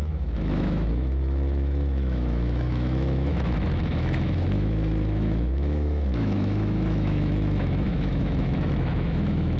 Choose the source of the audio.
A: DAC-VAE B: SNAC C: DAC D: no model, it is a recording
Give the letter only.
A